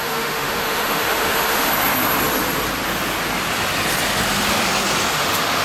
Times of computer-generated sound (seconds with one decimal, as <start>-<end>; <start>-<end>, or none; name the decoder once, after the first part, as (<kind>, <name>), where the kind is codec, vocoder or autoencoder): 0.0-1.7 (autoencoder, DAC-VAE); 5.1-5.6